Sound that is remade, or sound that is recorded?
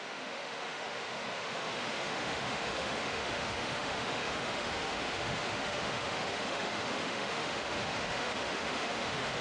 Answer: remade